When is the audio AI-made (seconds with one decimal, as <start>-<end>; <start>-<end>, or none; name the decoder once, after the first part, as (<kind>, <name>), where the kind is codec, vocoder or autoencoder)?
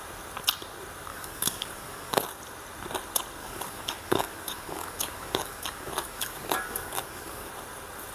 1.1-2.2 (codec, DAC); 3.4-7.5